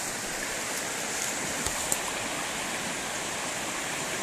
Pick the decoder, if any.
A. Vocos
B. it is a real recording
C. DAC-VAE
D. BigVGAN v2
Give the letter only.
B